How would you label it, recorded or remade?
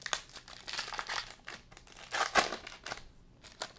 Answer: recorded